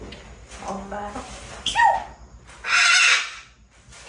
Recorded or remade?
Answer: recorded